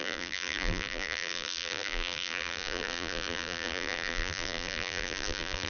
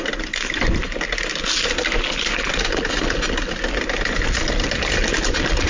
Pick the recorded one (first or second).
second